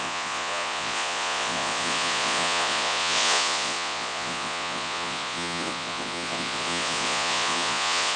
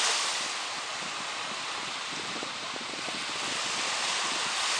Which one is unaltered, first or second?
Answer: second